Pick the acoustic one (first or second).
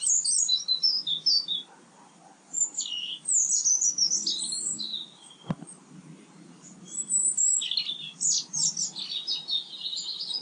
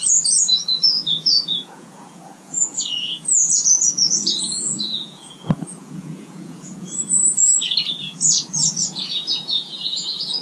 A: first